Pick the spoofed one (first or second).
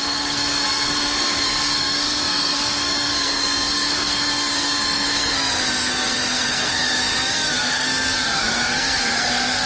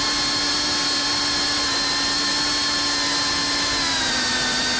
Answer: first